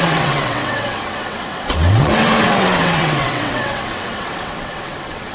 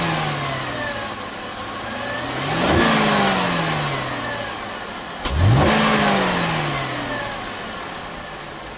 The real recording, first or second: second